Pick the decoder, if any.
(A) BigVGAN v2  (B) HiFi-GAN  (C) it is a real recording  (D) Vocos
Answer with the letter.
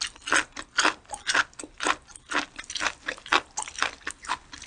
C